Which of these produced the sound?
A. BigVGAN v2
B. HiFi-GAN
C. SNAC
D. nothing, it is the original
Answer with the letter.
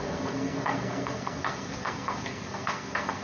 C